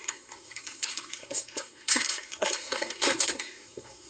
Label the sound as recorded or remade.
remade